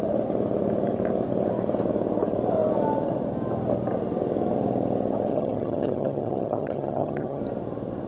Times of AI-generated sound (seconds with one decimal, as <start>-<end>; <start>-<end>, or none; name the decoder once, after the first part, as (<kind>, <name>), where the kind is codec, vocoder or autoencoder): 5.3-7.4 (vocoder, HiFi-GAN)